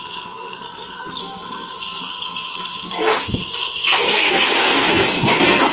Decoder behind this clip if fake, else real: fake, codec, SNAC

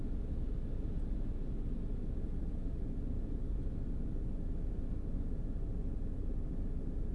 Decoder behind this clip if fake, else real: real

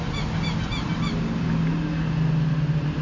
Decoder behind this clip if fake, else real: real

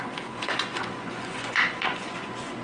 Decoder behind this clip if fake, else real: fake, vocoder, Vocos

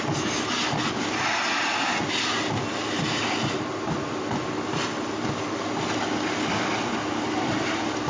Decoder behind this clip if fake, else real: real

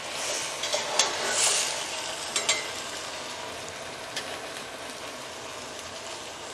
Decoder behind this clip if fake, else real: real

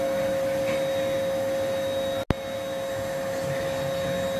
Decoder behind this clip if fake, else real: real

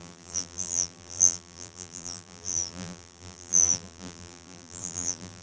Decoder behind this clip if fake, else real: fake, vocoder, BigVGAN v2